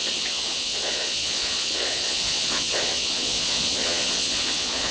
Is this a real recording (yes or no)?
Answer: no